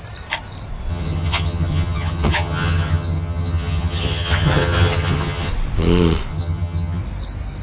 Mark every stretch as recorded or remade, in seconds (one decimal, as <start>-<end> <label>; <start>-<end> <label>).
0.0-0.9 recorded; 0.9-5.5 remade; 5.5-6.3 recorded; 6.3-7.0 remade; 7.0-7.6 recorded